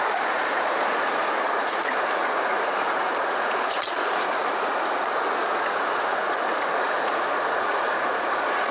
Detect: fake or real fake